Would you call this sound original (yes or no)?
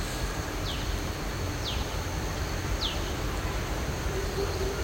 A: no